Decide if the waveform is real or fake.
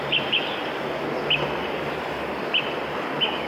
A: real